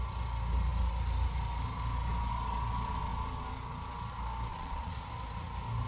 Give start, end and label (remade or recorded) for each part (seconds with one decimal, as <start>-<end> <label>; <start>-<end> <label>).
0.0-4.5 recorded; 4.5-5.1 remade; 5.1-5.9 recorded